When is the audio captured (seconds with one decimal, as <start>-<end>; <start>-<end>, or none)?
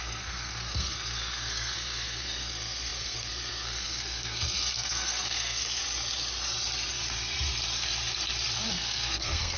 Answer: 5.8-8.7